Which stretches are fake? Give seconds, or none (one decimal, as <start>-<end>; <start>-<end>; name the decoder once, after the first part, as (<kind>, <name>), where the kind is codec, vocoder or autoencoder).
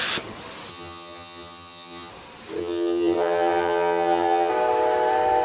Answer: 0.7-2.1 (vocoder, HiFi-GAN); 2.6-4.5